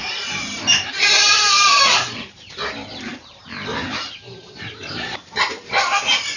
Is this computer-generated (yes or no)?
yes